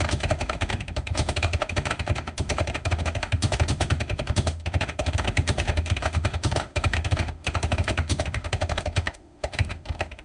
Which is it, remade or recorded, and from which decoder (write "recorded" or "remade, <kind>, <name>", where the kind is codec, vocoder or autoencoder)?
remade, autoencoder, DAC-VAE